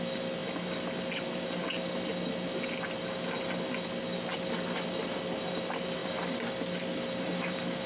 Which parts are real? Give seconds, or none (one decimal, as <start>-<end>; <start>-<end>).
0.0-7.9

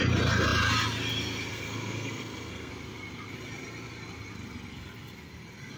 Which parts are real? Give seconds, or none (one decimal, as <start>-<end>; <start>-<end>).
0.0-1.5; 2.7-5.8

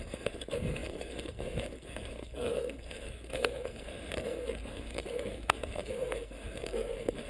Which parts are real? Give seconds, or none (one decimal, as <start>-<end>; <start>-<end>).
none

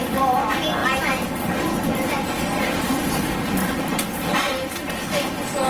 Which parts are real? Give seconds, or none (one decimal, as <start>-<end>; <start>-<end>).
0.0-0.8; 3.0-3.6; 5.0-5.7